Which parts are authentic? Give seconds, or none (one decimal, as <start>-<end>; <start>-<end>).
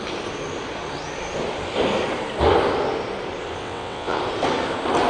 0.0-3.6; 4.2-5.1